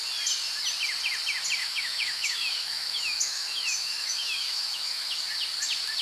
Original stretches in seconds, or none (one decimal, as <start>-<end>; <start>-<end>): 0.0-1.6; 5.2-6.0